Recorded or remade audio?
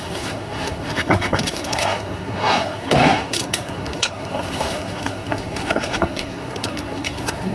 remade